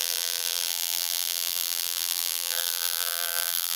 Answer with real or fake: fake